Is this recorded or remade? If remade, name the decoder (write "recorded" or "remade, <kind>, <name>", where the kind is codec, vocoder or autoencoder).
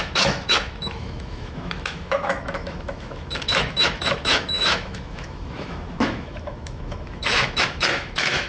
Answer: remade, autoencoder, DAC-VAE